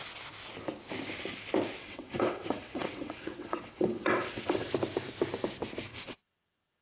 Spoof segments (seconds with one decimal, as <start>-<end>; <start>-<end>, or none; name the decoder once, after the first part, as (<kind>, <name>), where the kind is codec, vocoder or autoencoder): 1.8-4.7 (vocoder, WaveNeXt); 5.9-6.8